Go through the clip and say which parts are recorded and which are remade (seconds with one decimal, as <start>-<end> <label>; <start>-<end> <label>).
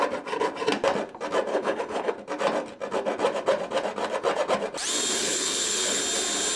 0.0-1.5 recorded; 1.5-2.1 remade; 2.1-5.2 recorded; 5.2-6.0 remade; 6.0-6.6 recorded